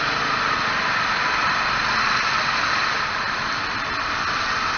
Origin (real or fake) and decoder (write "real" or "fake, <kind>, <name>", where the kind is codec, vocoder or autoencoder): real